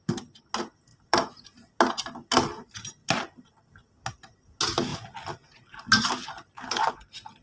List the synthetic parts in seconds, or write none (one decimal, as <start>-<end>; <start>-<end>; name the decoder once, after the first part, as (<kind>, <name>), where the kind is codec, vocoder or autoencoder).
3.0-3.6 (vocoder, BigVGAN v2)